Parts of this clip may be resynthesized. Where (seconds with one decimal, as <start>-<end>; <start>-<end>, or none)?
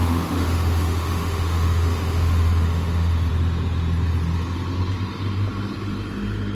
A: 0.0-3.3